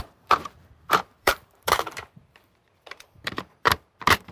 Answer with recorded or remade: remade